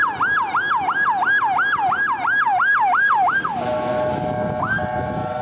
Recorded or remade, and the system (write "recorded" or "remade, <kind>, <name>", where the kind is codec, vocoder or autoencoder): recorded